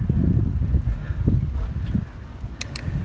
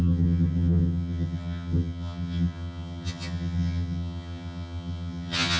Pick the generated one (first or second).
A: second